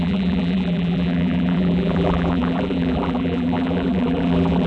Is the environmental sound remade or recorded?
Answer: remade